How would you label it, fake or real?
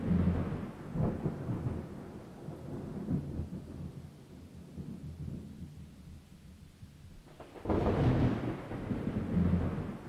real